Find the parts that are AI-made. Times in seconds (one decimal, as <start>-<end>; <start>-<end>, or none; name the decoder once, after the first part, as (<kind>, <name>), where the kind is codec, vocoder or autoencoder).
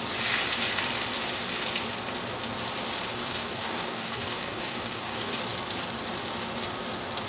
3.3-5.4 (codec, DAC)